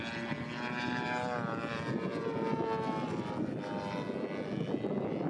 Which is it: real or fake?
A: real